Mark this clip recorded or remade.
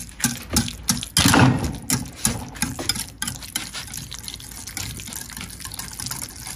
recorded